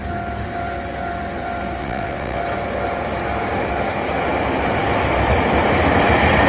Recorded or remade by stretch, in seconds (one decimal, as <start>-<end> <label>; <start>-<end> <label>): 0.0-1.8 recorded; 1.8-2.4 remade; 2.4-6.5 recorded